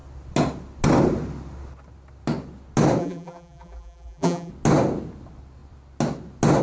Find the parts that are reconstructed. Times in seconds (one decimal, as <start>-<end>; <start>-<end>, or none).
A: 3.0-4.5